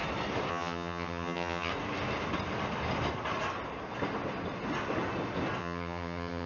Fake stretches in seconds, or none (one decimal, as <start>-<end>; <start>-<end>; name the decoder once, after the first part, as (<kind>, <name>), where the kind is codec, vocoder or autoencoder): 0.5-1.7 (vocoder, HiFi-GAN); 5.6-6.5